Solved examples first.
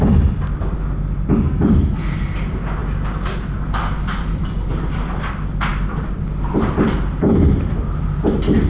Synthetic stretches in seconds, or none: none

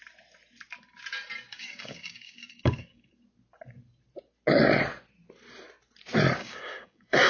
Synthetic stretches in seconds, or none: 1.5-3.1 (codec, DAC); 6.4-7.3

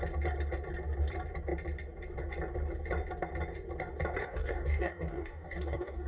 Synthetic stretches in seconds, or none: 4.2-6.1 (codec, DAC)

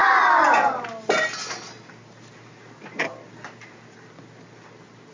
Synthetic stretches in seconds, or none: none